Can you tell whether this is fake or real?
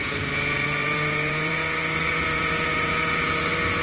fake